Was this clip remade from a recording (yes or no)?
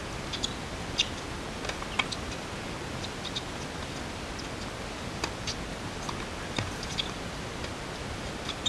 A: no